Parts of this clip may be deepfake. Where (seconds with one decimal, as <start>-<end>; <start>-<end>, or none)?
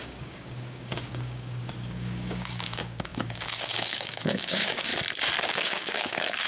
0.0-4.9; 5.4-6.5